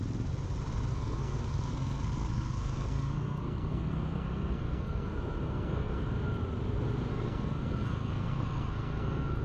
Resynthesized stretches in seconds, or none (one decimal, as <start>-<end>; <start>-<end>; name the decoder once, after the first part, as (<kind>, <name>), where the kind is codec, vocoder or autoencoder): 0.9-6.1 (codec, SNAC); 7.1-9.4

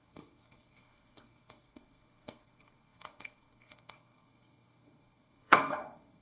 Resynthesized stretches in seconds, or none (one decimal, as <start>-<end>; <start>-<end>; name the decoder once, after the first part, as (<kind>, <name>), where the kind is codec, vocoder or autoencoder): 0.0-6.2 (codec, SNAC)